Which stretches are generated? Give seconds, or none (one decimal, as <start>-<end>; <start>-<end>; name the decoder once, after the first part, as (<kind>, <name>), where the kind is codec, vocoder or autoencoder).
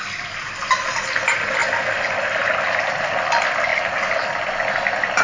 none